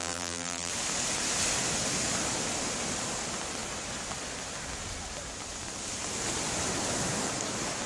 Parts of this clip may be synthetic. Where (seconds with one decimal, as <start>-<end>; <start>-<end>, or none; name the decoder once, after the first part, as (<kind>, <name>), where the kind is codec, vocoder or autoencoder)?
0.0-0.7 (vocoder, BigVGAN v2)

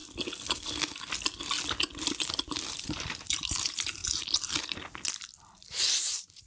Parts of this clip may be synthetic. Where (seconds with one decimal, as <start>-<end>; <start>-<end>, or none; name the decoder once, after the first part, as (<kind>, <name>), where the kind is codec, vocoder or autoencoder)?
2.8-4.0 (vocoder, BigVGAN v2); 5.8-6.5

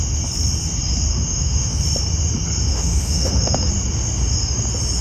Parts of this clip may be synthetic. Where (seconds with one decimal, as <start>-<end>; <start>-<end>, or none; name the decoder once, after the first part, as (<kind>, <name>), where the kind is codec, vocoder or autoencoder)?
1.1-1.8 (autoencoder, DAC-VAE); 2.7-3.7

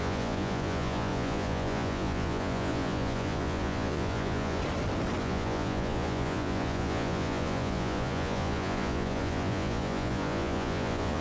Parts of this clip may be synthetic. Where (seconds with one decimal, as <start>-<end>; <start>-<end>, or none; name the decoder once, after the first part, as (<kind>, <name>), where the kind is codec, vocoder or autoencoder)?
0.0-4.6 (vocoder, Vocos); 5.2-11.2

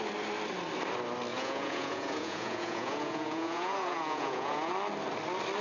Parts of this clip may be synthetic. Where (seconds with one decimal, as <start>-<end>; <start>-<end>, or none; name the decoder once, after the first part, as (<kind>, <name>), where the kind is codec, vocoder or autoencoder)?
1.3-4.7 (vocoder, Vocos)

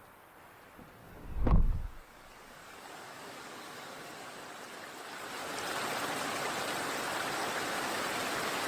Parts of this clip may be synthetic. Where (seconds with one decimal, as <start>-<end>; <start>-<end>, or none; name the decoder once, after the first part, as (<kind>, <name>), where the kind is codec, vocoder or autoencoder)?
1.0-4.4 (codec, DAC)

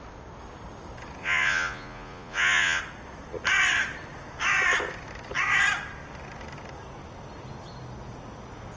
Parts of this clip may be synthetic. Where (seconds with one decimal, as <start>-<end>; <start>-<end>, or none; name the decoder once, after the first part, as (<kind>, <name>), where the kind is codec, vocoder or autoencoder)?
1.2-2.8 (vocoder, Vocos)